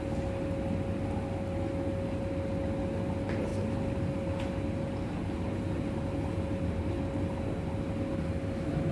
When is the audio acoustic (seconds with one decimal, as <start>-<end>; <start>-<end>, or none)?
0.0-8.9